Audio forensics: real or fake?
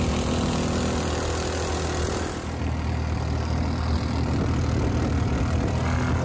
real